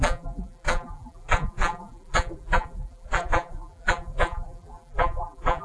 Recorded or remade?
remade